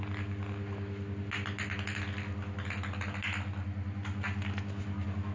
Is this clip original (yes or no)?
yes